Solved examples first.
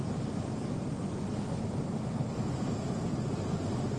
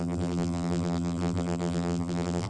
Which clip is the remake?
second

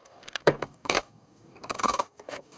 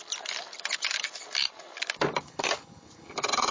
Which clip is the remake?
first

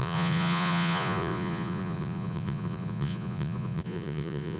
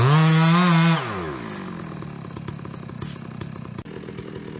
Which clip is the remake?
first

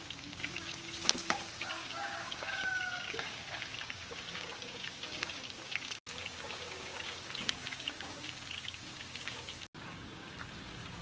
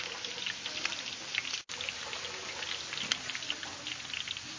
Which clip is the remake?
first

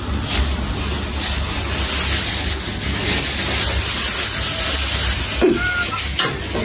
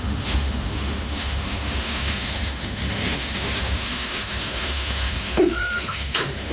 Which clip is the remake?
second